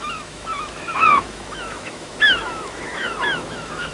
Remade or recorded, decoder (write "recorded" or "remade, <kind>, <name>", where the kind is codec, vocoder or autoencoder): remade, autoencoder, DAC-VAE